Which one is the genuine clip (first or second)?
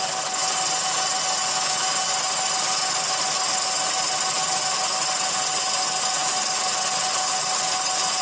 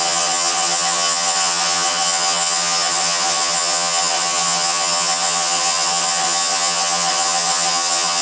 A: first